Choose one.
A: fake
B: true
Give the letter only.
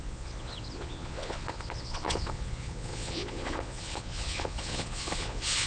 A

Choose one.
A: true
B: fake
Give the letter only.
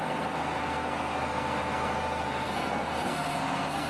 B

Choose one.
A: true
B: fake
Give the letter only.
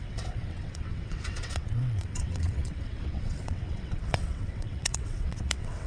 B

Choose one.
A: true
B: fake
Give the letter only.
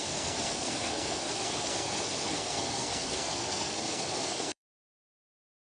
B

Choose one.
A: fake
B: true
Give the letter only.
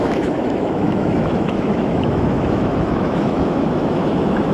A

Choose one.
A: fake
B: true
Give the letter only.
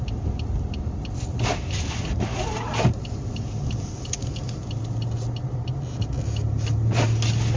B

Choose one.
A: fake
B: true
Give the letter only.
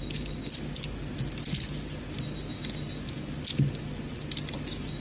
B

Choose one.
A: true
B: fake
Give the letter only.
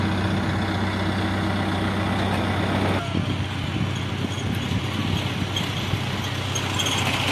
A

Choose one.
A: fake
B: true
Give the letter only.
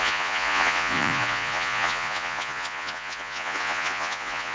A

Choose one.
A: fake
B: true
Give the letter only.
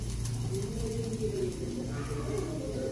B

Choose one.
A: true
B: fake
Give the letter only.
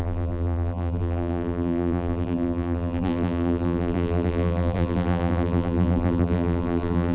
B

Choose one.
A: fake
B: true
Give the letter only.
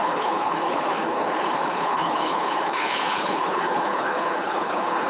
A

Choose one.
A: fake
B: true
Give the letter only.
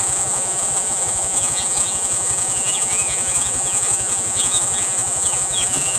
A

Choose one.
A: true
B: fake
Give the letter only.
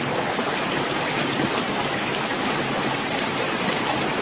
A